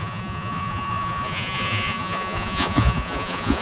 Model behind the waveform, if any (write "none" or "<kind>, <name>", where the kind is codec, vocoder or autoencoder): vocoder, Vocos